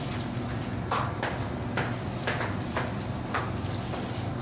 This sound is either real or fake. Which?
real